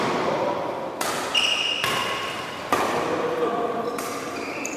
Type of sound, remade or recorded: recorded